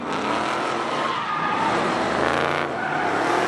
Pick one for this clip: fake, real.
real